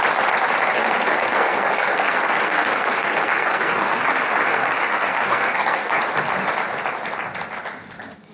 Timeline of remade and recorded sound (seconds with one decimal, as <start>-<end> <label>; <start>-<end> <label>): 0.0-0.8 recorded; 0.8-4.0 remade; 4.0-4.5 recorded; 4.5-6.0 remade; 6.0-8.3 recorded